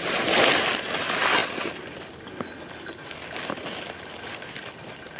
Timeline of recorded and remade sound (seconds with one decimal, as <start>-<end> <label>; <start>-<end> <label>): 0.0-5.2 recorded